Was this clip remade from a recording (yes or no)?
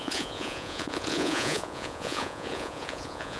yes